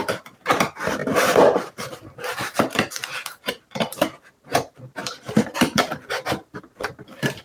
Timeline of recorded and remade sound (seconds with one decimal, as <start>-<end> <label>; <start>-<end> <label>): 0.0-7.4 remade